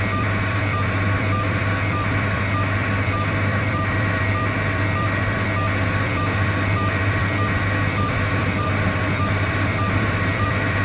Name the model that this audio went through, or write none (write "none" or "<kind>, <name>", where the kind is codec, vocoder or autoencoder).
vocoder, BigVGAN v2